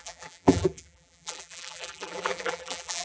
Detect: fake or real fake